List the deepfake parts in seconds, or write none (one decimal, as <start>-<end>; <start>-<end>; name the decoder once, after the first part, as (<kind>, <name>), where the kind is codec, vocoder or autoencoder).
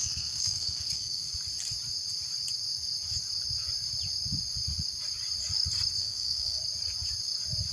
0.0-1.3 (codec, SNAC); 6.0-6.6